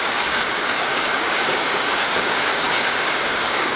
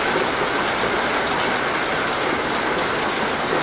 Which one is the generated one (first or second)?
first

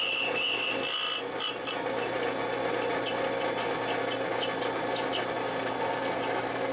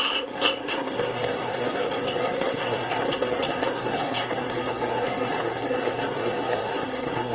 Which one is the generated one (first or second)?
second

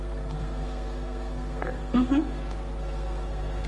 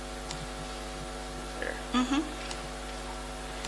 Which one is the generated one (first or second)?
first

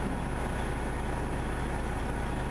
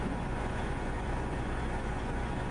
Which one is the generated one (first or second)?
second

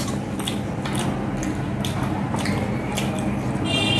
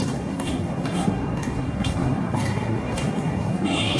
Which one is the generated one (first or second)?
second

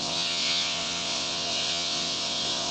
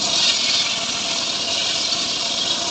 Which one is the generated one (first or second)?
first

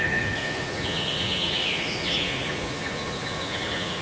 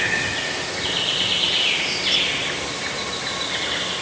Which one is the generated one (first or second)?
first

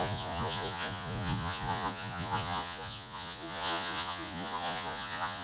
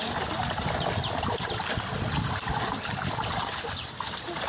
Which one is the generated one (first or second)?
first